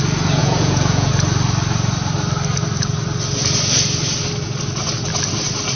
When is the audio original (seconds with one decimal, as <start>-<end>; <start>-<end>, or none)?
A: 0.0-0.4; 1.1-5.8